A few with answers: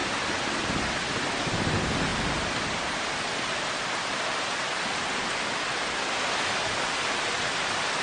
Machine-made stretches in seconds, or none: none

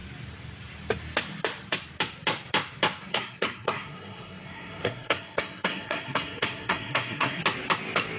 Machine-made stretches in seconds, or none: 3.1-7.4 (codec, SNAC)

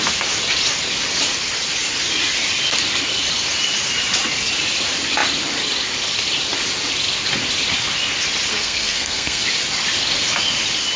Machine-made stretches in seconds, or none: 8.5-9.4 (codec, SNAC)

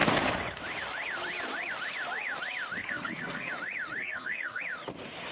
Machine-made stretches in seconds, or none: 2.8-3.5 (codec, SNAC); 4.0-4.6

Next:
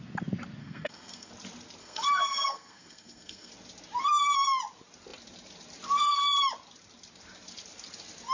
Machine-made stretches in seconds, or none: 0.6-1.3 (codec, SNAC); 1.8-3.5

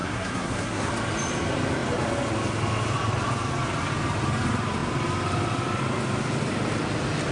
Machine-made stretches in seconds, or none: 0.0-0.9 (codec, SNAC)